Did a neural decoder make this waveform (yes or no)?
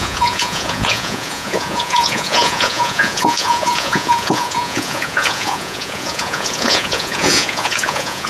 yes